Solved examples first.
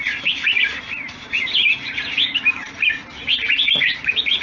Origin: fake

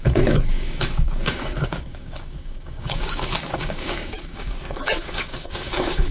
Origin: fake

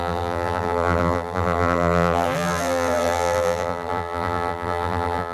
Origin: fake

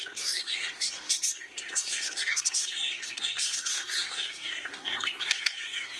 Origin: fake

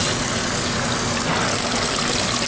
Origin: real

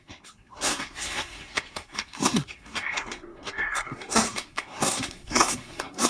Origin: fake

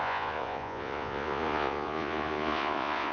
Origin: fake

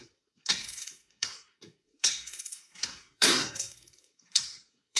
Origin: fake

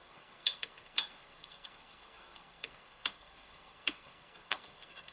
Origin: fake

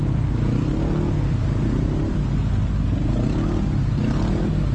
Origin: real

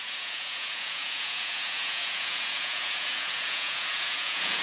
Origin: fake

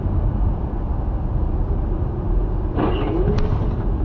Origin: real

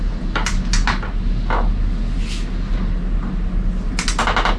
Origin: real